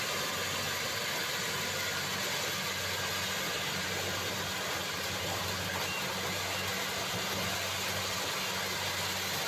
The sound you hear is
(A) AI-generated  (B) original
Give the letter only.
B